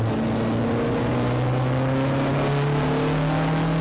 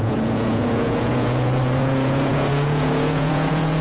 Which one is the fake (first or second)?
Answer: second